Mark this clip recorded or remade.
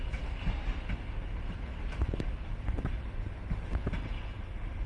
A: recorded